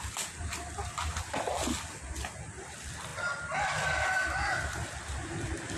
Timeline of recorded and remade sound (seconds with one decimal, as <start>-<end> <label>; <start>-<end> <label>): 0.0-5.8 recorded